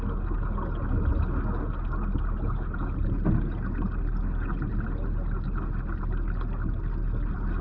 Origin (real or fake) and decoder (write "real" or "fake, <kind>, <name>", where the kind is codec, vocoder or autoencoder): real